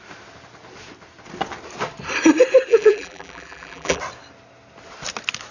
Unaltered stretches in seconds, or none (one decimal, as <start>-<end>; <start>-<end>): 0.0-2.7; 4.0-5.5